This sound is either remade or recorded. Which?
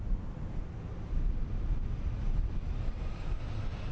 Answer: recorded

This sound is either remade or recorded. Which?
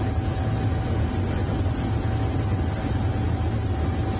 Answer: recorded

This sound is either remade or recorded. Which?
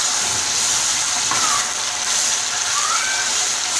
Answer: remade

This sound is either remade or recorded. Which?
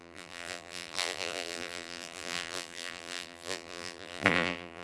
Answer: remade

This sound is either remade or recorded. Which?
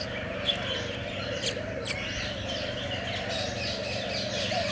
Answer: recorded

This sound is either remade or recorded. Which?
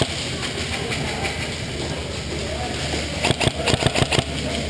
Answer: recorded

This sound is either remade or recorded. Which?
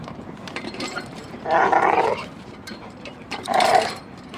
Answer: remade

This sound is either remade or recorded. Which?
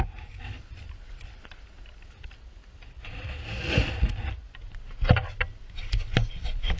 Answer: recorded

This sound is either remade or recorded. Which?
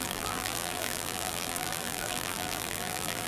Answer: remade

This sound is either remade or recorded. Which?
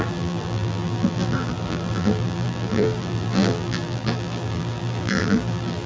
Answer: remade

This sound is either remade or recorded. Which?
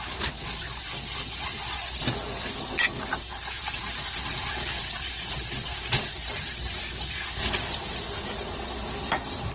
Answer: recorded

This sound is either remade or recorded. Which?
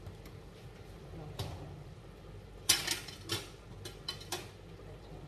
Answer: recorded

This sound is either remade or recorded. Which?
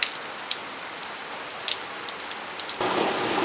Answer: recorded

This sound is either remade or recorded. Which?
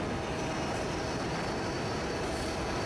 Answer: recorded